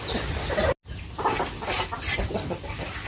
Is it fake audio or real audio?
real